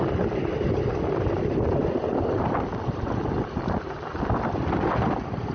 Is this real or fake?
real